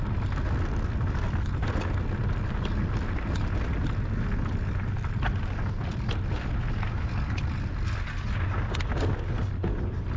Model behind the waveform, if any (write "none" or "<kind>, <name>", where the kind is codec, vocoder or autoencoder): none